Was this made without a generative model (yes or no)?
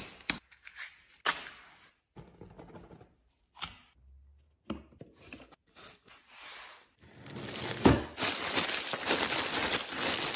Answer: yes